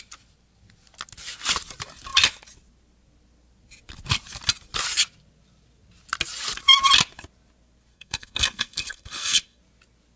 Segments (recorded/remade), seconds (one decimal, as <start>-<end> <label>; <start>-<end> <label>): 0.0-7.9 recorded; 7.9-9.6 remade; 9.6-10.2 recorded

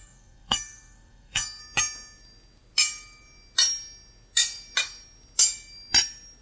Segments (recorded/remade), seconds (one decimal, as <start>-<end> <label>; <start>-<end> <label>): 0.0-1.6 remade; 1.6-6.4 recorded

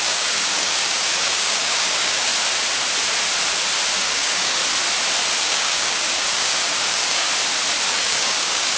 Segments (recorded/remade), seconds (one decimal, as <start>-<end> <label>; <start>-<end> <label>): 0.0-2.3 remade; 2.3-3.9 recorded; 3.9-4.6 remade; 4.6-5.4 recorded; 5.4-7.3 remade; 7.3-7.9 recorded; 7.9-8.8 remade

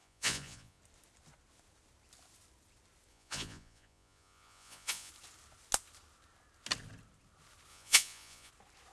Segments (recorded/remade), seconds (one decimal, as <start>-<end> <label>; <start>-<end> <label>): 0.0-0.8 remade; 0.8-3.1 recorded; 3.1-5.1 remade; 5.1-7.7 recorded; 7.7-8.5 remade; 8.5-8.9 recorded

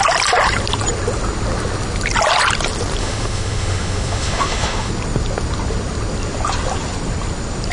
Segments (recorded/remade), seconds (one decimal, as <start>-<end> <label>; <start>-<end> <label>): 0.0-3.0 recorded; 3.0-4.9 remade; 4.9-7.7 recorded